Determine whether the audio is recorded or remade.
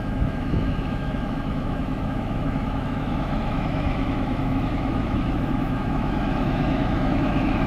remade